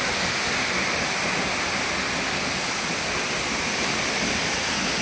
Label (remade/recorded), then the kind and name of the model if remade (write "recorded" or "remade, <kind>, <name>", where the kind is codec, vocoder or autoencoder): recorded